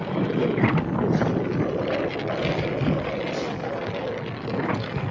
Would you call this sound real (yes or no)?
yes